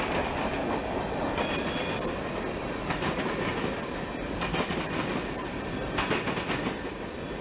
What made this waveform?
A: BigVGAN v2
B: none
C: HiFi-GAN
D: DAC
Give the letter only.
B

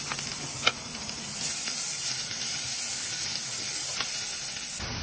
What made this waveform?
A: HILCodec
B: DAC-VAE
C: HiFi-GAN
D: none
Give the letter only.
D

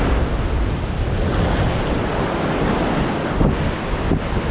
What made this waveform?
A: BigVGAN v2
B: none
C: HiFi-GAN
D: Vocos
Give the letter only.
B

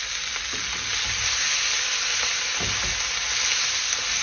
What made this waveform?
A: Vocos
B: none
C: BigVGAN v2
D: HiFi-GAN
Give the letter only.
B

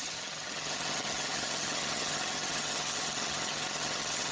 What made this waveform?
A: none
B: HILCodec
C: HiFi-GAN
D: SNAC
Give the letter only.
C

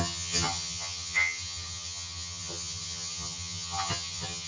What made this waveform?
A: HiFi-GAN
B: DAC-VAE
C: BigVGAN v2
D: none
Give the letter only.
A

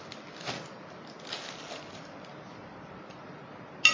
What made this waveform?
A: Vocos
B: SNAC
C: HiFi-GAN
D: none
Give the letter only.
D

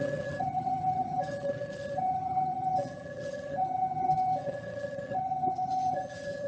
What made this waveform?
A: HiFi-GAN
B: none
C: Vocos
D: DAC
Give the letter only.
A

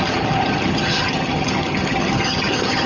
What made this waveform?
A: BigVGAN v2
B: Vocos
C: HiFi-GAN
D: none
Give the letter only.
C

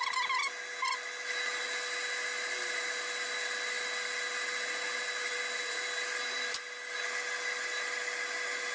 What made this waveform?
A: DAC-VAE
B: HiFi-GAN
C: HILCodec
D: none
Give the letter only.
D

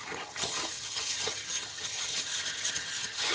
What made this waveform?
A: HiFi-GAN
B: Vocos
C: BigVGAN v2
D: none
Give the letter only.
A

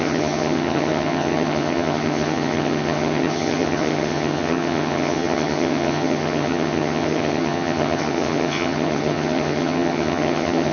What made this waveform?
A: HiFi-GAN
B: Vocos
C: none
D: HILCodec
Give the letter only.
A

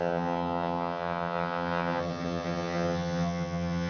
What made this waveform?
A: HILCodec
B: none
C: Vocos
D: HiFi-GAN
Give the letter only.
D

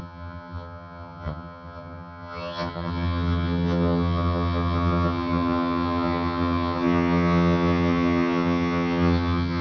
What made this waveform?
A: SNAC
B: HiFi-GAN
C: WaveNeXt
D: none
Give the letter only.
B